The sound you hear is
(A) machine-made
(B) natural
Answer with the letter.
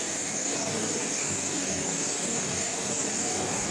A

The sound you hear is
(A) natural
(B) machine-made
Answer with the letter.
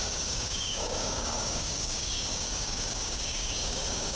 B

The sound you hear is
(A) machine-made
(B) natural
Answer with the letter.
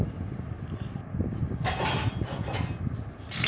B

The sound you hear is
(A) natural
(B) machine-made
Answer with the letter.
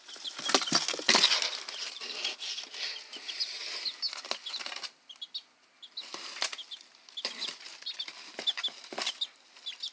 A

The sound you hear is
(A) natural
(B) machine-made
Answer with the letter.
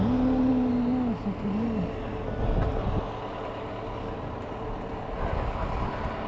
A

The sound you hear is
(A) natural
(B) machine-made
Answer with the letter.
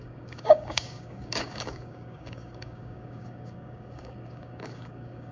B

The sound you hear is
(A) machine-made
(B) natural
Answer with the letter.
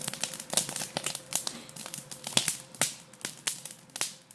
B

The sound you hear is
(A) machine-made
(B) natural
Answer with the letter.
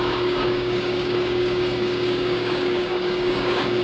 A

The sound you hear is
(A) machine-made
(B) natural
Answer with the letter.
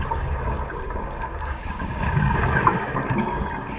A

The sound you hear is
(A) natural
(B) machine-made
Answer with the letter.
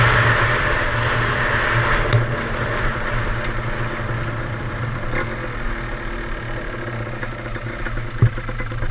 A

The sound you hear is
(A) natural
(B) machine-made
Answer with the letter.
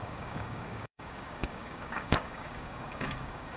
B